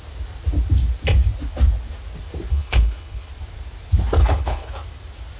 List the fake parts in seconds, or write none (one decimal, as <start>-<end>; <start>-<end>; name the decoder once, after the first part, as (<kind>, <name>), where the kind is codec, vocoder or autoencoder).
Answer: 2.5-3.3 (codec, HILCodec); 4.2-4.7